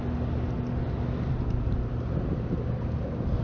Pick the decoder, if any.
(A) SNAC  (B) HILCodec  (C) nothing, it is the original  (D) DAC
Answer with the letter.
C